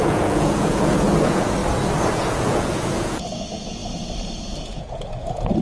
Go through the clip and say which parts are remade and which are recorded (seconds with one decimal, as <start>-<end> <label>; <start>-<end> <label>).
0.0-1.6 remade; 1.6-2.1 recorded; 2.1-3.8 remade; 3.8-4.6 recorded; 4.6-5.6 remade